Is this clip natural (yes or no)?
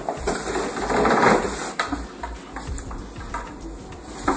yes